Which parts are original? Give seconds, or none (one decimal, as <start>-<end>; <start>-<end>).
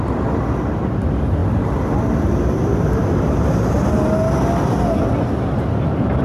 0.0-6.2